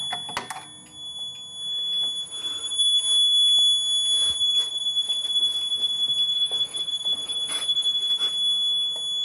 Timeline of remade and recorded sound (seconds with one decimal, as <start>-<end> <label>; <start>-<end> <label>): 0.0-6.3 recorded; 6.3-8.1 remade; 8.1-9.2 recorded